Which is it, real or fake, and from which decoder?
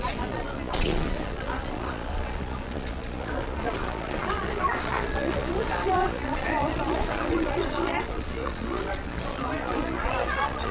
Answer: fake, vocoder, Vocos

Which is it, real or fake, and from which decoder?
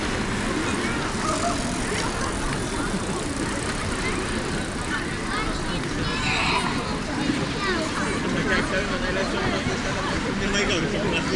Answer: real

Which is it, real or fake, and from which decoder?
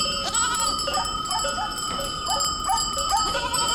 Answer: fake, vocoder, BigVGAN v2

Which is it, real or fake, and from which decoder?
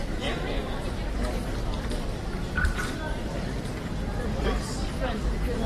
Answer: fake, vocoder, BigVGAN v2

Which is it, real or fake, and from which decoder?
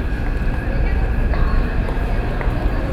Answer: real